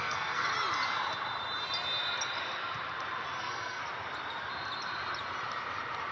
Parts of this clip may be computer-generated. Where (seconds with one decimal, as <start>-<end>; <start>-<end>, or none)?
0.0-0.5; 3.4-3.8

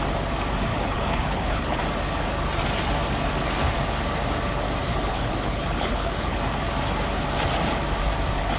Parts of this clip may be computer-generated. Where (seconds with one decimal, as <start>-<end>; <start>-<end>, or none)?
0.7-1.8; 4.9-6.4